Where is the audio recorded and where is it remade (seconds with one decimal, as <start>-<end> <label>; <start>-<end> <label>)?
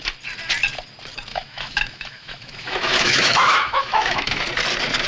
0.0-1.3 recorded; 1.3-4.4 remade; 4.4-5.1 recorded